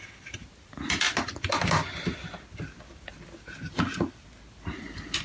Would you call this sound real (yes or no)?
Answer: yes